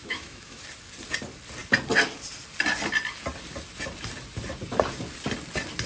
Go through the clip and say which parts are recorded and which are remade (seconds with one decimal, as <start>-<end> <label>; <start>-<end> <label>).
0.0-0.6 remade; 0.6-5.9 recorded